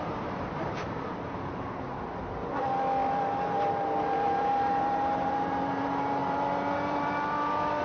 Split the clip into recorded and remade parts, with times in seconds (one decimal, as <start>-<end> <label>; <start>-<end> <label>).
0.0-2.2 remade; 2.2-3.7 recorded; 3.7-7.8 remade